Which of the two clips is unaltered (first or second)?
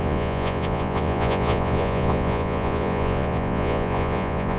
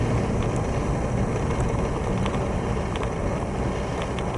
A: second